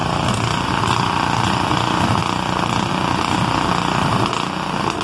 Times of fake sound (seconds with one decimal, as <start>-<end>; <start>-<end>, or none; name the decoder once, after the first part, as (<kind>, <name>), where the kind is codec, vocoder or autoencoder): none